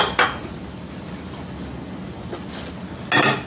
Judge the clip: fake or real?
real